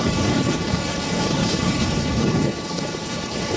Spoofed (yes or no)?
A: yes